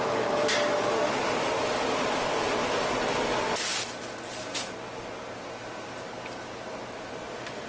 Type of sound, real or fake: real